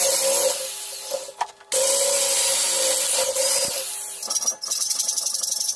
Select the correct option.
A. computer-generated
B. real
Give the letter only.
B